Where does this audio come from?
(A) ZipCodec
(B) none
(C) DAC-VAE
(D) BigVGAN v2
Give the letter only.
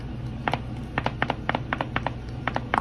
B